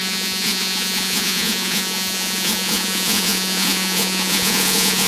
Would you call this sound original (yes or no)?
no